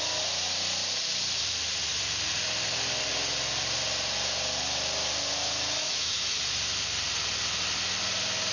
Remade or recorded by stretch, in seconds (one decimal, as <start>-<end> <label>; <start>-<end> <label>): 0.0-5.8 recorded; 5.8-6.4 remade; 6.4-8.5 recorded